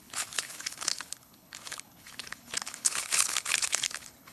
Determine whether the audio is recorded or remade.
remade